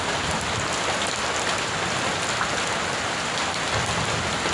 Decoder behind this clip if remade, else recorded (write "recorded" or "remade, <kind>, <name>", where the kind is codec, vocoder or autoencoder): recorded